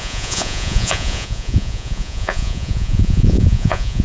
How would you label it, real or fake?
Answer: fake